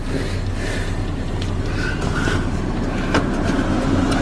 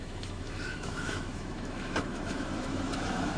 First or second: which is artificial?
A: second